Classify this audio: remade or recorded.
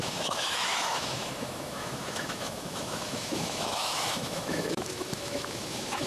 remade